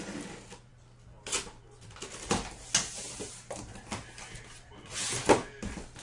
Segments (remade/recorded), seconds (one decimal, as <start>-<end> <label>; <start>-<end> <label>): 0.0-6.0 recorded